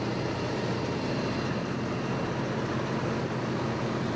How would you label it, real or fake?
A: real